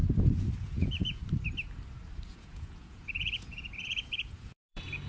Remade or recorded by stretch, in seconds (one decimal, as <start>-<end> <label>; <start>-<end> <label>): 0.0-0.6 recorded; 0.6-1.2 remade; 1.2-2.3 recorded; 2.3-5.1 remade